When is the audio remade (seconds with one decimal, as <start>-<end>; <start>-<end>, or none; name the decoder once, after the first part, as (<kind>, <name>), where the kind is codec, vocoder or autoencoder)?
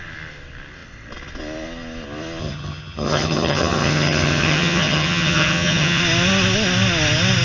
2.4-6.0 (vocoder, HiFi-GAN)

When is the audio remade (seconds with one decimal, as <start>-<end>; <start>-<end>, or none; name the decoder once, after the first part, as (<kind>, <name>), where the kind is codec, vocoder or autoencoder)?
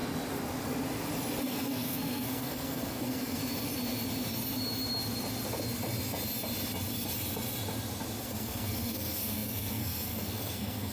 1.4-3.4 (codec, SNAC); 8.2-10.9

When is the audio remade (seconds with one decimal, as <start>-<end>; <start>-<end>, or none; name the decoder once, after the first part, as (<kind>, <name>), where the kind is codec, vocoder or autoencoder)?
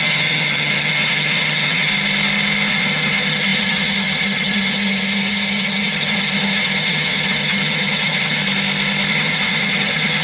0.0-1.9 (vocoder, HiFi-GAN); 2.7-8.4; 9.1-10.2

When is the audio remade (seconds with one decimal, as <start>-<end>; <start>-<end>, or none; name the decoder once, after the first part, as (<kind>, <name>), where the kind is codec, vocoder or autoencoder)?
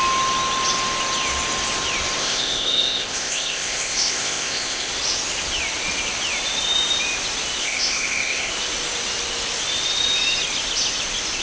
2.2-4.9 (codec, ZipCodec); 7.6-8.5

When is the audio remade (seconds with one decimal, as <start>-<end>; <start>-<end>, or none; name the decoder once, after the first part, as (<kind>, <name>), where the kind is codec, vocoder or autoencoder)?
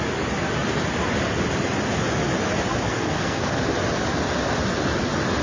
2.9-3.6 (codec, SNAC)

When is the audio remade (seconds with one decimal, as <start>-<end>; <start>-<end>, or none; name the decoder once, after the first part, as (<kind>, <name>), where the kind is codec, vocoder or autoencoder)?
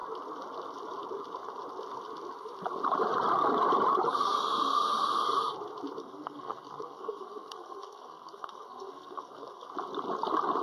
6.0-9.7 (codec, SNAC)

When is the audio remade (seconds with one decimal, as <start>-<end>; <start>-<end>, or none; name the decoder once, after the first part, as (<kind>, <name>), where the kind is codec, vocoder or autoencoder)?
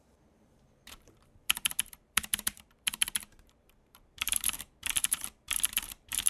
0.0-6.3 (vocoder, BigVGAN v2)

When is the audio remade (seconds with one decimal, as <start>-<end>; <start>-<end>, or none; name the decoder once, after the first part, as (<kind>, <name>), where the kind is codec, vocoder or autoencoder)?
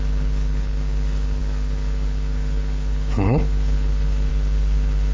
0.0-5.1 (codec, HILCodec)